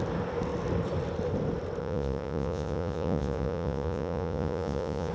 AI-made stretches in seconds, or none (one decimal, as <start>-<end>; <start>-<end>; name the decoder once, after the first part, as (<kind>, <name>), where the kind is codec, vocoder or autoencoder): 1.8-5.1 (vocoder, Vocos)